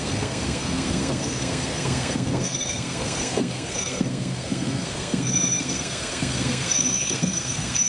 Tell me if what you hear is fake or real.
fake